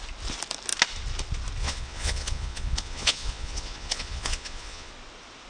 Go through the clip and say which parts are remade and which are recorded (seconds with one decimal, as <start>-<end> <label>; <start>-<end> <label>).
0.0-1.6 recorded; 1.6-4.9 remade; 4.9-5.5 recorded